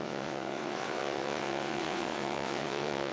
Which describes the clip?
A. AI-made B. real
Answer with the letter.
A